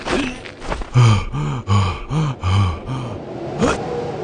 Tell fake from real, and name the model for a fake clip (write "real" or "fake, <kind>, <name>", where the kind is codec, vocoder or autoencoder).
real